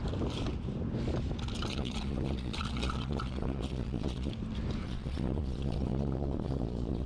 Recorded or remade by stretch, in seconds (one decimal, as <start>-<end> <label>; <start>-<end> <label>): 0.0-1.7 recorded; 1.7-4.3 remade; 4.3-4.8 recorded; 4.8-7.1 remade